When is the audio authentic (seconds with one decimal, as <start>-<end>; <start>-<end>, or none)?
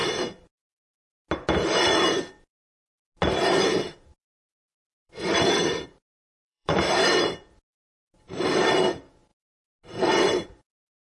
0.0-5.0; 6.7-11.0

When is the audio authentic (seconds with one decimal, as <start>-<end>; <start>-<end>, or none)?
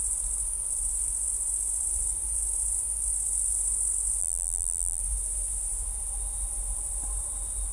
0.0-4.2; 5.0-7.7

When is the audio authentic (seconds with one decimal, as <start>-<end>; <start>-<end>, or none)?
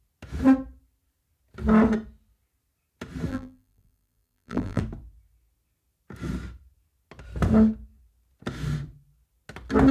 0.0-3.3; 4.8-9.9